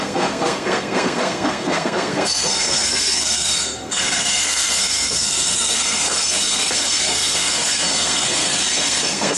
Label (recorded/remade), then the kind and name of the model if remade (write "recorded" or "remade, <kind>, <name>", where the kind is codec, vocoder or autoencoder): remade, codec, SNAC